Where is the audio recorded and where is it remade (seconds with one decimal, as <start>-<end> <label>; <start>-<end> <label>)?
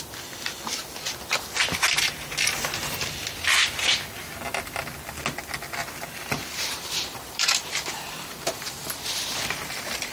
0.0-6.4 recorded; 6.4-10.1 remade